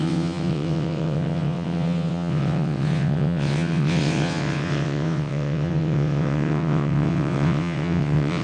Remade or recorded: remade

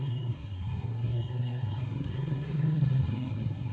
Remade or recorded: remade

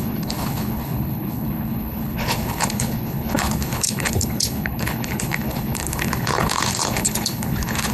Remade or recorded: remade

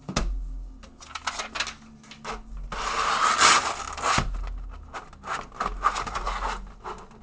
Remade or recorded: recorded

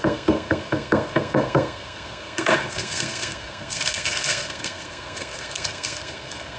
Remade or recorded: remade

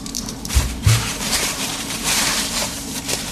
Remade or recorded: remade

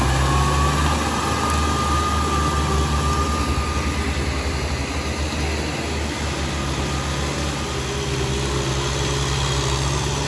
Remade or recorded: recorded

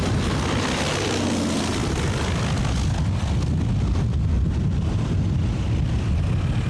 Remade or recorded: recorded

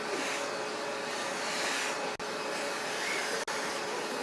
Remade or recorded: recorded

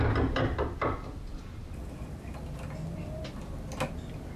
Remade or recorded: recorded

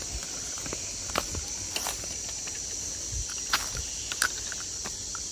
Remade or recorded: recorded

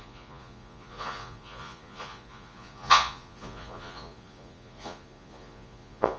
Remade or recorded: remade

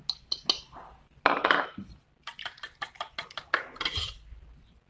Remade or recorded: recorded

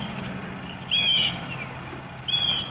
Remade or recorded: recorded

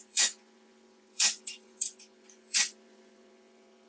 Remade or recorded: remade